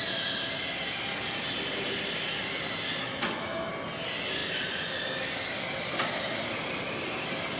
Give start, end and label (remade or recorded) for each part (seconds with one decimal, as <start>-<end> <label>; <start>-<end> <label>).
0.0-3.0 recorded; 3.0-3.7 remade; 3.7-7.6 recorded